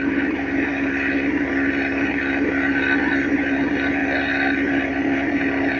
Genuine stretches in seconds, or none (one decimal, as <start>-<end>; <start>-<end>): 0.7-1.5; 4.0-4.9